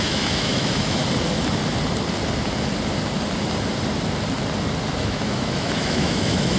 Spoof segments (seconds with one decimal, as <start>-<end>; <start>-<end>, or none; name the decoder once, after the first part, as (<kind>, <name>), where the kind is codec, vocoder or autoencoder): 0.0-1.0 (autoencoder, DAC-VAE); 5.0-6.6